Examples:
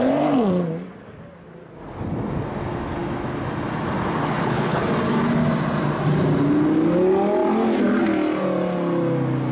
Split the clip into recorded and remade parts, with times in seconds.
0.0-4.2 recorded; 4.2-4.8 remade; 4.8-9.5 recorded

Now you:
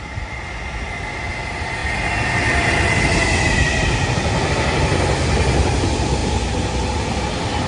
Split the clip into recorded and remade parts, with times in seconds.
0.0-7.7 recorded